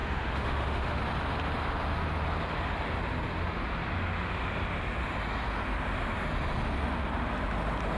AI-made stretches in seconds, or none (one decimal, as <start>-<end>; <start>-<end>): 0.0-1.0